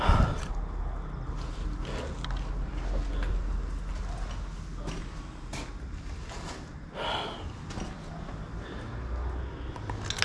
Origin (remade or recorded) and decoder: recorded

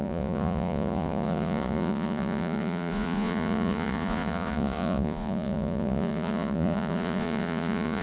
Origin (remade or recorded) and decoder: remade, vocoder, Vocos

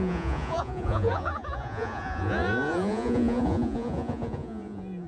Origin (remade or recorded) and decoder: remade, vocoder, Vocos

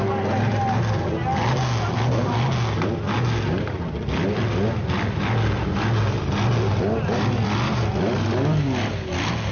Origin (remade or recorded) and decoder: recorded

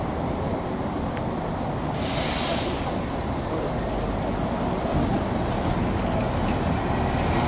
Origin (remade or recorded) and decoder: recorded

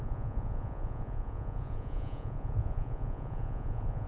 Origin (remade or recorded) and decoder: remade, vocoder, Vocos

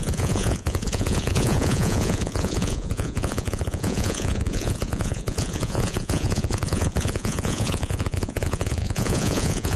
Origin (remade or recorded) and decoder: remade, vocoder, Vocos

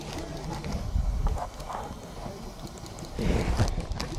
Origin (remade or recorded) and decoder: recorded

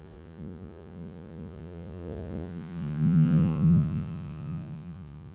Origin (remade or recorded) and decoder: remade, vocoder, Vocos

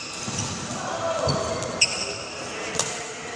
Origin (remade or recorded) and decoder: recorded